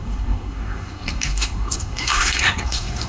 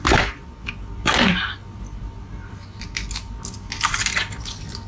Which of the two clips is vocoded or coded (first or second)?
first